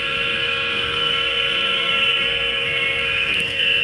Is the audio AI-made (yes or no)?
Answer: yes